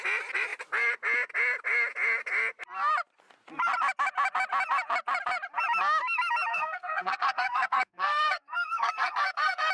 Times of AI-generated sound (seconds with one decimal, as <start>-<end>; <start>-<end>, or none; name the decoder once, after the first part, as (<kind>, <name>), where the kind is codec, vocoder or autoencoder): 6.5-9.7 (codec, SNAC)